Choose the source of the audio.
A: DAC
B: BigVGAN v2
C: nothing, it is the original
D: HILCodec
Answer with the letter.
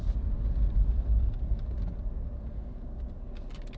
C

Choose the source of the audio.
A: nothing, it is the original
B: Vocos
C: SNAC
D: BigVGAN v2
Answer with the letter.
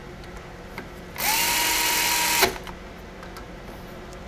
A